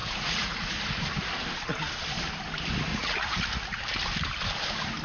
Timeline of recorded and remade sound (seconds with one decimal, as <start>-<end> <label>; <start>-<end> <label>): 0.0-0.7 remade; 0.7-2.9 recorded; 2.9-3.8 remade; 3.8-5.0 recorded